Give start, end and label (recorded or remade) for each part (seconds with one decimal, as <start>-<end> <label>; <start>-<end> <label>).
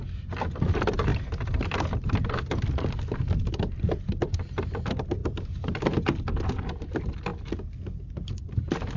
0.0-9.0 recorded